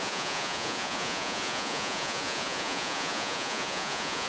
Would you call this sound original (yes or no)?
no